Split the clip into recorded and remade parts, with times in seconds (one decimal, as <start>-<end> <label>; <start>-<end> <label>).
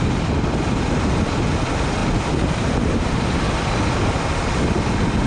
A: 0.0-2.0 recorded; 2.0-3.2 remade; 3.2-5.3 recorded